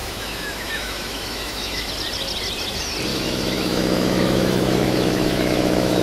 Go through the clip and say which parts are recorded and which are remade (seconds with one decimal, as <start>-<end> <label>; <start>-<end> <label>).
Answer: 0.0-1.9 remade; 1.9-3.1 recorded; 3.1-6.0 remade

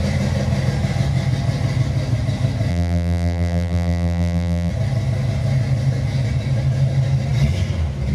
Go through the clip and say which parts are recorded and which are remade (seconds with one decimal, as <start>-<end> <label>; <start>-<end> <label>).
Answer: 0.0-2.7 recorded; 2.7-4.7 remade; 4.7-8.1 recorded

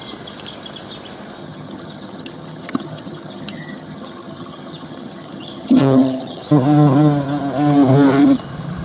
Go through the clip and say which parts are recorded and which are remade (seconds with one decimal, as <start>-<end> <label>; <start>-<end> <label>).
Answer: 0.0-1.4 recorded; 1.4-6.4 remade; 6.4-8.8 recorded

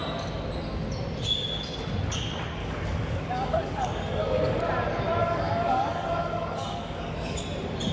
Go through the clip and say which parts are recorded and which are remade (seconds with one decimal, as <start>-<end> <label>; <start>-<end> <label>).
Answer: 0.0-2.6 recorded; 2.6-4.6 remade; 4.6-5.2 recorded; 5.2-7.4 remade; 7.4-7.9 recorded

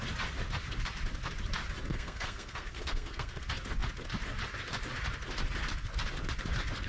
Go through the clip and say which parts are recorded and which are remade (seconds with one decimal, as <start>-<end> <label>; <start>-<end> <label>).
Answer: 0.0-1.9 recorded; 1.9-3.4 remade; 3.4-6.9 recorded

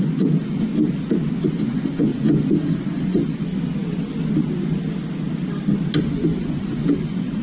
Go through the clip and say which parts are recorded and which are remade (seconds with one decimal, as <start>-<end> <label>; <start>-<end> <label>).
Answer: 0.0-0.7 remade; 0.7-1.5 recorded; 1.5-3.5 remade; 3.5-6.0 recorded; 6.0-7.4 remade

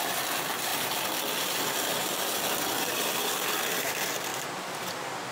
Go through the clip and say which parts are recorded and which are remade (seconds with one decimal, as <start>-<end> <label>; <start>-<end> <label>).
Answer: 0.0-5.3 recorded